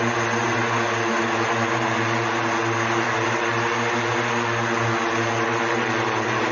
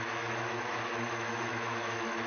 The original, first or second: first